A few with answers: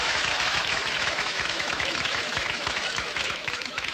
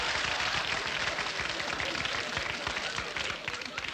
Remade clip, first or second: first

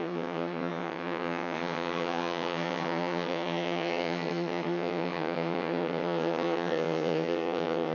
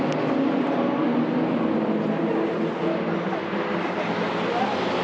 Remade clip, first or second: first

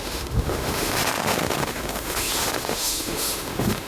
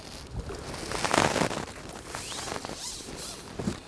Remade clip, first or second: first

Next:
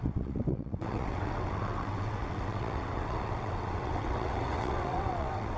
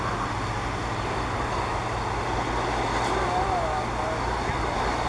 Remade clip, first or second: first